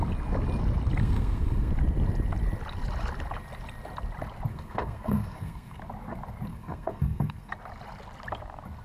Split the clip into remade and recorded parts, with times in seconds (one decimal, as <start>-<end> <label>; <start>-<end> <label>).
0.0-1.0 recorded; 1.0-1.7 remade; 1.7-4.5 recorded; 4.5-5.8 remade; 5.8-6.5 recorded; 6.5-7.5 remade; 7.5-8.8 recorded